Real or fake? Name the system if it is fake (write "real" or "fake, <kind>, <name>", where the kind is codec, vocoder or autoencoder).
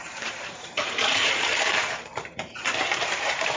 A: fake, vocoder, BigVGAN v2